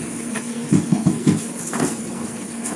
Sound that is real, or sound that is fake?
fake